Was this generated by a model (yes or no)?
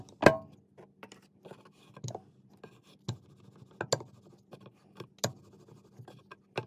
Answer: no